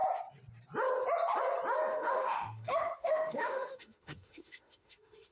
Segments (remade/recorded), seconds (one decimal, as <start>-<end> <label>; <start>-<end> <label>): 0.0-1.9 recorded; 1.9-5.3 remade